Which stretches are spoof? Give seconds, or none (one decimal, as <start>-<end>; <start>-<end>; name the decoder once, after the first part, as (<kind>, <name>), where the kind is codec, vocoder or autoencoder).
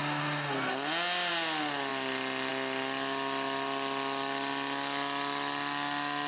none